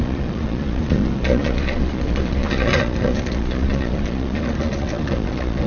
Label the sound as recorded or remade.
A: remade